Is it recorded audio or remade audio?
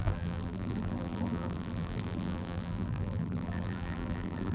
remade